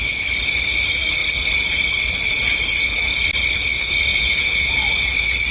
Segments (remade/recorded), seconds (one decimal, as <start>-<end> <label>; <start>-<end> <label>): 0.0-4.1 recorded; 4.1-4.7 remade; 4.7-5.5 recorded